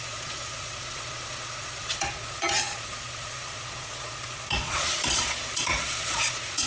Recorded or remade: remade